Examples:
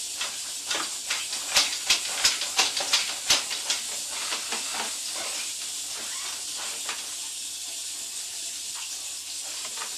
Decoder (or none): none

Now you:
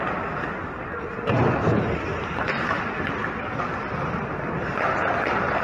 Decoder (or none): none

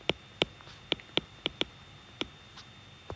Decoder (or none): none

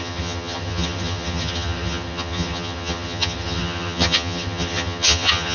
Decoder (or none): vocoder, HiFi-GAN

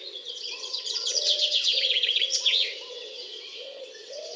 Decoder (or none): vocoder, WaveNeXt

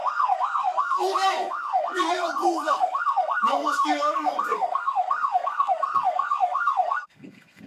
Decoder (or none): codec, SNAC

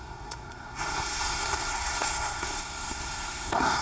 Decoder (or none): codec, SNAC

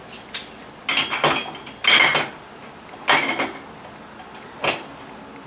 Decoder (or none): none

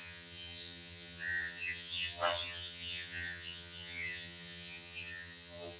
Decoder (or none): vocoder, HiFi-GAN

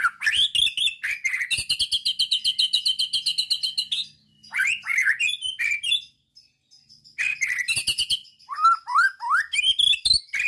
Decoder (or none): none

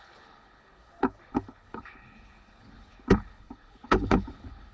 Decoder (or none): codec, HILCodec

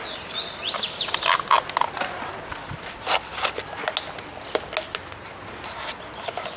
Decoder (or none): none